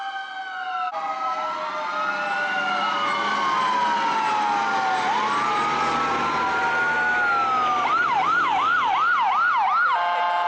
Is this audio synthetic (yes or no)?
no